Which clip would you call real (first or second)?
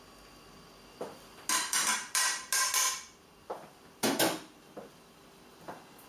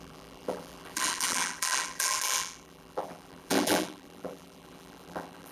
first